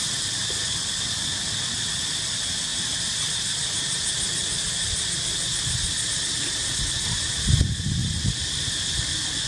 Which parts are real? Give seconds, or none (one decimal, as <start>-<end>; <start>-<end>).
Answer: 0.0-2.7; 3.3-9.5